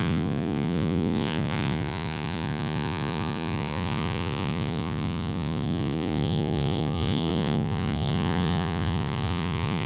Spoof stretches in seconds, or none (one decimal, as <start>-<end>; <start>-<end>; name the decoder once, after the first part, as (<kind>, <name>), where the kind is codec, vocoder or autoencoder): 0.0-9.9 (vocoder, Vocos)